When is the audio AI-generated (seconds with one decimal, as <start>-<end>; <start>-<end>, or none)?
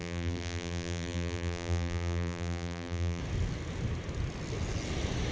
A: 0.0-3.2